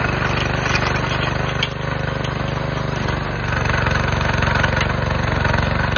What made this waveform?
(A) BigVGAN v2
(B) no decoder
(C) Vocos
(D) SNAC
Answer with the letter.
B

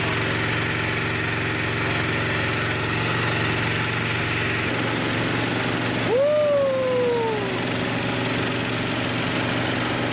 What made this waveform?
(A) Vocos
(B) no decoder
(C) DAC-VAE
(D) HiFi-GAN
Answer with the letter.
B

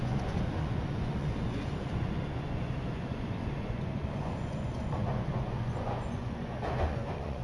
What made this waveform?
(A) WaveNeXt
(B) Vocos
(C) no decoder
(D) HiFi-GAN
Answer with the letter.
B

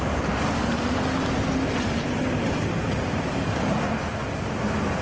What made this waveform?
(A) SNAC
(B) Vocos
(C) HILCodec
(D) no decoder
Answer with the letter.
D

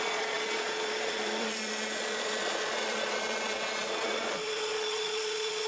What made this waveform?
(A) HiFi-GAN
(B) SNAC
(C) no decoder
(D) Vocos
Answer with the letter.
D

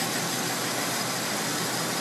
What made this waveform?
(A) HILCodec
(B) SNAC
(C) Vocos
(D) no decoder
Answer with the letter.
D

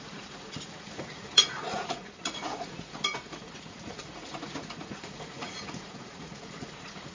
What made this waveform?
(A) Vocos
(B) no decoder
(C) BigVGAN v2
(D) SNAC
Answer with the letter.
A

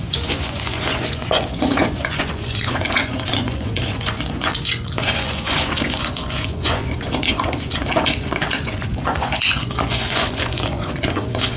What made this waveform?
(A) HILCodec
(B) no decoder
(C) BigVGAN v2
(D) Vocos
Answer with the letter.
D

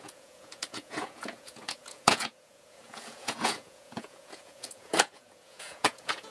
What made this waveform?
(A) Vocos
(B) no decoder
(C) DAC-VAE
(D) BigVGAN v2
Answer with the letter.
A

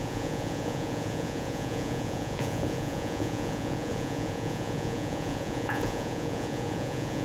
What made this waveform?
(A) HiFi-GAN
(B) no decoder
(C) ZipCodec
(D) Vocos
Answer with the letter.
D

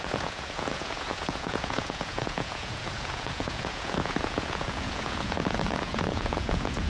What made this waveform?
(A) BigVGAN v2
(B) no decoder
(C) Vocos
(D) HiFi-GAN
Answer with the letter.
C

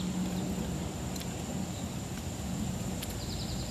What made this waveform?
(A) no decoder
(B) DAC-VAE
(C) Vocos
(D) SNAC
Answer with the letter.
A